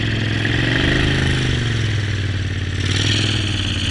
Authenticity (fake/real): real